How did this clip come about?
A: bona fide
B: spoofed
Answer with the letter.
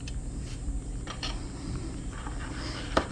B